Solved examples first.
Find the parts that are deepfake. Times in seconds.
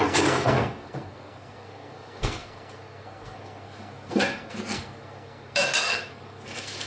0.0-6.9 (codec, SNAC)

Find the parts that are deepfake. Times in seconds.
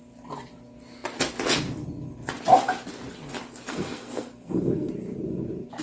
3.7-4.9 (codec, SNAC)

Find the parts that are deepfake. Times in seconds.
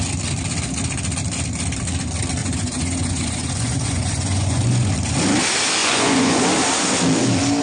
2.4-4.9 (vocoder, Vocos); 5.8-6.4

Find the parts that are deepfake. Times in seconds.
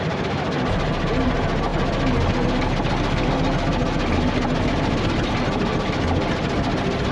none